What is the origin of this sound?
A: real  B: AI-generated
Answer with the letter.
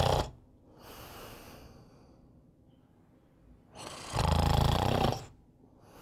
A